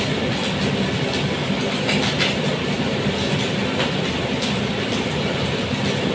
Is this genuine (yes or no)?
yes